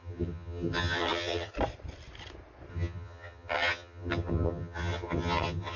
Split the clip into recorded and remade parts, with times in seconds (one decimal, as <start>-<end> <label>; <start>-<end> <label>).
0.0-1.5 remade; 1.5-2.7 recorded; 2.7-5.8 remade